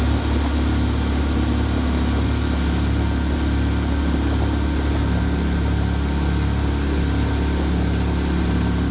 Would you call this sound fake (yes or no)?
no